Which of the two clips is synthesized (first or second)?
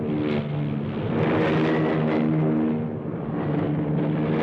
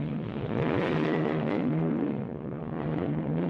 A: second